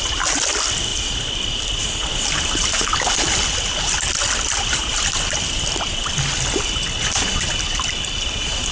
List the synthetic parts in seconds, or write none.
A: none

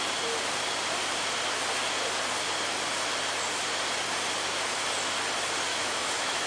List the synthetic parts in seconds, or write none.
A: 5.7-6.5 (autoencoder, DAC-VAE)

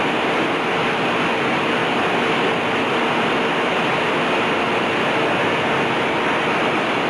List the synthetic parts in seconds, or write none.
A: none

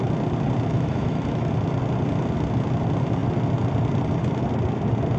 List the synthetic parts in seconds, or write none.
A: 0.7-1.5 (autoencoder, DAC-VAE)